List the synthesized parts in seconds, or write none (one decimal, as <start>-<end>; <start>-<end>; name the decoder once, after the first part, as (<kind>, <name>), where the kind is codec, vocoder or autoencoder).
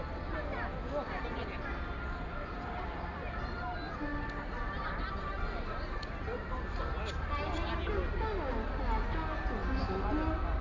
none